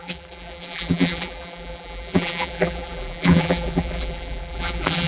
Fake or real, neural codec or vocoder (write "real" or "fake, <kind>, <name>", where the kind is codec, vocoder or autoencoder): fake, vocoder, BigVGAN v2